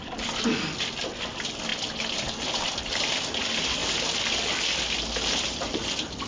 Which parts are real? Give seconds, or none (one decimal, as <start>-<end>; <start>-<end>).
0.0-3.8